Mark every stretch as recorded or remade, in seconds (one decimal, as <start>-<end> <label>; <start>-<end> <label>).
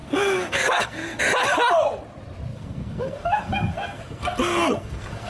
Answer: 0.0-1.2 remade; 1.2-2.5 recorded; 2.5-5.3 remade